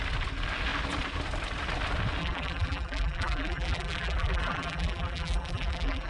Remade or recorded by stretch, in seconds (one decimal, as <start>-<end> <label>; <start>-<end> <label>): 0.0-2.2 recorded; 2.2-6.1 remade